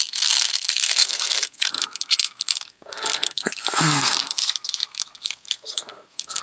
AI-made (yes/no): yes